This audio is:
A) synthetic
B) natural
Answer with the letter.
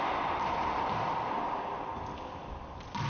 B